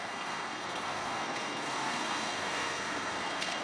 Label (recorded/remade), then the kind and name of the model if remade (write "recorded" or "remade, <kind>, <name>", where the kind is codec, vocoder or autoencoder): remade, codec, SNAC